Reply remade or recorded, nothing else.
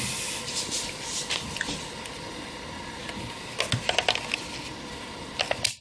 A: recorded